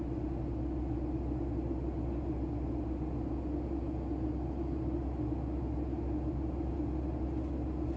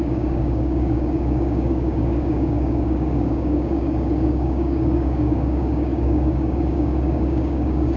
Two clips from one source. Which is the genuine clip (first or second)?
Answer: first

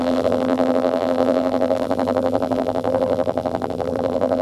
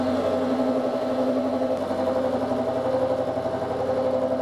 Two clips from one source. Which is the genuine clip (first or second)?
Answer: second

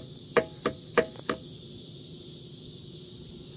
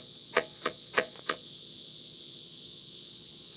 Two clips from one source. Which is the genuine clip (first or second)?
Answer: first